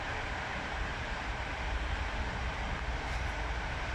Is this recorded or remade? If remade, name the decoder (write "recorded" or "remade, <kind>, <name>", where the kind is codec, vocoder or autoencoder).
remade, vocoder, BigVGAN v2